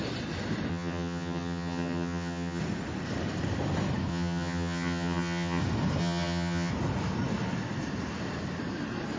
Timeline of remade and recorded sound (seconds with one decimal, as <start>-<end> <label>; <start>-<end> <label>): 0.0-0.7 recorded; 0.7-2.6 remade; 2.6-4.1 recorded; 4.1-5.6 remade; 5.6-6.0 recorded; 6.0-6.7 remade; 6.7-9.2 recorded